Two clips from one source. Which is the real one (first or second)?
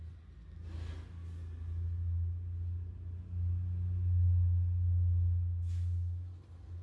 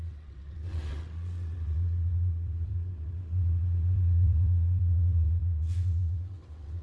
first